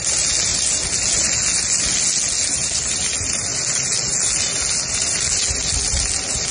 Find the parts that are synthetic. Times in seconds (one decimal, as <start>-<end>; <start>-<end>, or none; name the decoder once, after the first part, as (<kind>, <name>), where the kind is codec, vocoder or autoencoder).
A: none